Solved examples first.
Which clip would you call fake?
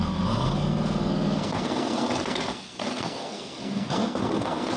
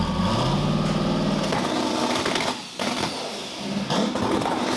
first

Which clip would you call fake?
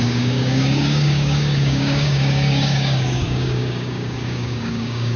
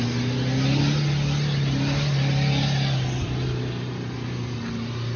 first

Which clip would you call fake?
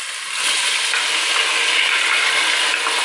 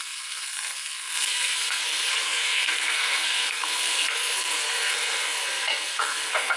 second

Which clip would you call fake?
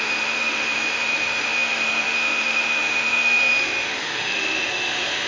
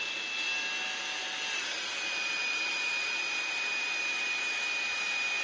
first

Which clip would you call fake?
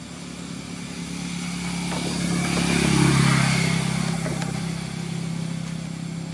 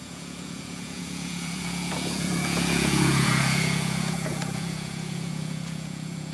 second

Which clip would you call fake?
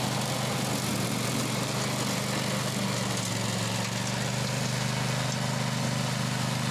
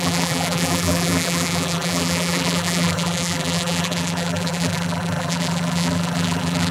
second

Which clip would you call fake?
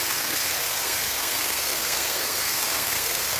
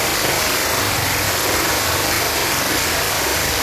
first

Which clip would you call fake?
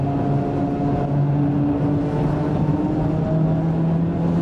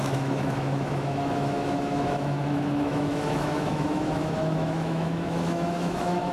second